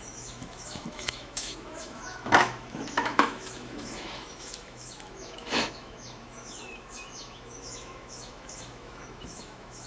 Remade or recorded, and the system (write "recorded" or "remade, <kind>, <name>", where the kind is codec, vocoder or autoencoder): remade, autoencoder, DAC-VAE